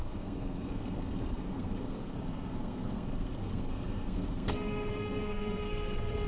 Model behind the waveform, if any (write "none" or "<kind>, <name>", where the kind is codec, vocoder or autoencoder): codec, SNAC